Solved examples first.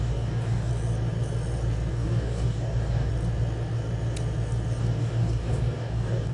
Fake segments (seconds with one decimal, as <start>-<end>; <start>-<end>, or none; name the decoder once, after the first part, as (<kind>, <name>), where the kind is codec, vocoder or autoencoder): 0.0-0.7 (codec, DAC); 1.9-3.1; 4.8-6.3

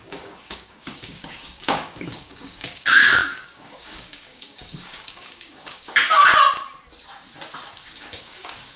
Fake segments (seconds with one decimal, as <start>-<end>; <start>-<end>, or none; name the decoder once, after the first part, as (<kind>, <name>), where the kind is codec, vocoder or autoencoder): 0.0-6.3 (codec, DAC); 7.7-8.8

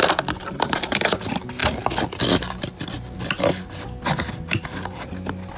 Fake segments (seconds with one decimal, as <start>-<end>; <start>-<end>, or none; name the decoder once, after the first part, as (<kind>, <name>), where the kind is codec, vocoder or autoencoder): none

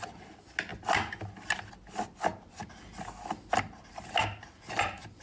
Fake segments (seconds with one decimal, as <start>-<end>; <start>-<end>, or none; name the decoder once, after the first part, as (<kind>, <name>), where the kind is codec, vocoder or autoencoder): none